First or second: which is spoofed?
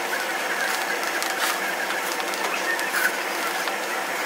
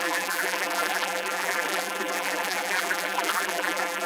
second